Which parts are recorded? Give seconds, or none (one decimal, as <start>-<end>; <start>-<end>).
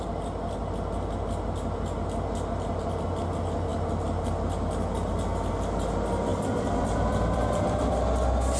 0.0-6.3; 7.9-8.6